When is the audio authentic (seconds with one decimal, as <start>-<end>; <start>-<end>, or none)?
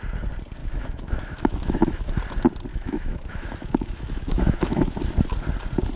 0.0-0.6; 2.1-2.7; 5.0-6.0